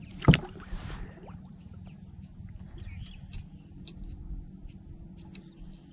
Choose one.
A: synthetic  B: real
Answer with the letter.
B